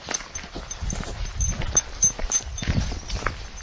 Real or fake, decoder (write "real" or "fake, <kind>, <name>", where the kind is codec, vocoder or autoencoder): real